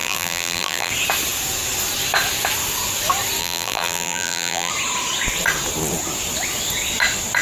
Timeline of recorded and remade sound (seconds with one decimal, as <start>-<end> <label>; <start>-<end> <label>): 0.0-0.9 remade; 0.9-3.4 recorded; 3.4-4.7 remade; 4.7-7.4 recorded